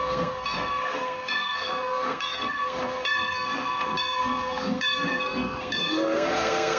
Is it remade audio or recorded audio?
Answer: remade